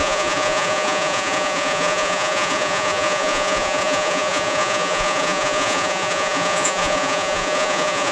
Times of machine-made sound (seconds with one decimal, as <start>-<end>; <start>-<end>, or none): 0.0-8.1